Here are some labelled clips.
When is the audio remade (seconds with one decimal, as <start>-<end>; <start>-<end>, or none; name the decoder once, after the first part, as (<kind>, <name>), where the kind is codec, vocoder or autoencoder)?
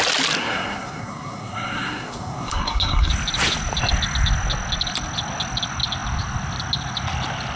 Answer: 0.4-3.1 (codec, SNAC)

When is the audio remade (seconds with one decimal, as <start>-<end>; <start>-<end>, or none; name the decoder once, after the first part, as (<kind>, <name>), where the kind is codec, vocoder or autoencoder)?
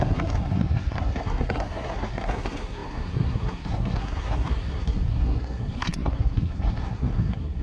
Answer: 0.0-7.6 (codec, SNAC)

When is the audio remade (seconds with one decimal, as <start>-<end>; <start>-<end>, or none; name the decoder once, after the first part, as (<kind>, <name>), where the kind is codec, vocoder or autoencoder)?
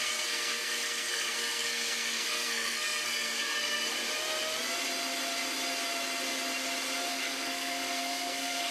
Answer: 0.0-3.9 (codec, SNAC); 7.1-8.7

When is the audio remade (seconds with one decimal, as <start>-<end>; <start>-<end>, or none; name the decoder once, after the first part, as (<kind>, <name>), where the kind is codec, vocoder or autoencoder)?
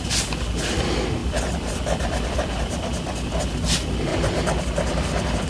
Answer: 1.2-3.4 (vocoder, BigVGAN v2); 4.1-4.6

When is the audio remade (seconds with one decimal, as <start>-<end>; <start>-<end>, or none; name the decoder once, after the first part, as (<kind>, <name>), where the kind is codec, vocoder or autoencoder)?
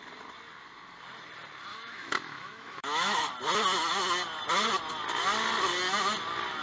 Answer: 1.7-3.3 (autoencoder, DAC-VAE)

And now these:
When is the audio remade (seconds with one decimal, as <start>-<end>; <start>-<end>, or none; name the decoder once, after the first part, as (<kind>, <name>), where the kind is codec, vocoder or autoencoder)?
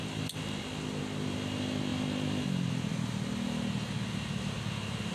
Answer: none